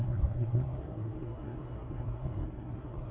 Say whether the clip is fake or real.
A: fake